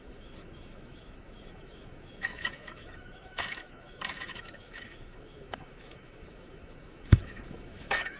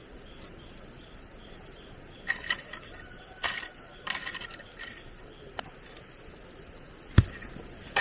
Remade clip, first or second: first